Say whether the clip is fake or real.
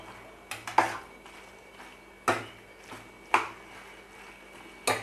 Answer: real